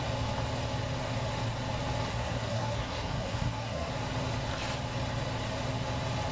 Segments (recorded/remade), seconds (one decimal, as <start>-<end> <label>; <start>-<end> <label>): 0.0-2.1 recorded; 2.1-3.9 remade; 3.9-6.3 recorded